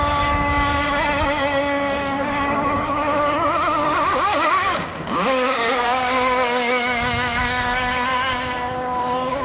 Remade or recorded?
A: remade